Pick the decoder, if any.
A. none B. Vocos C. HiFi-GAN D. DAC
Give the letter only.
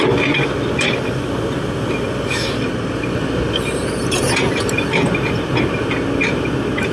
A